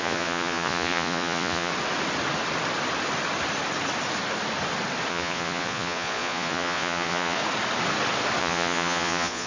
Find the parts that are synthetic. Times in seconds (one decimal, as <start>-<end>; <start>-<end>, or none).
0.0-1.7; 5.1-7.4; 8.4-9.5